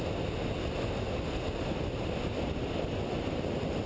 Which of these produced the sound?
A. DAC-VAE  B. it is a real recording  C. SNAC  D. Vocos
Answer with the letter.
B